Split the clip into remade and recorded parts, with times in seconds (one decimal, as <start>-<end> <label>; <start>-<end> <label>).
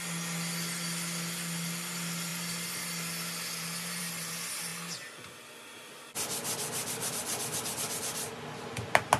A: 0.0-9.2 recorded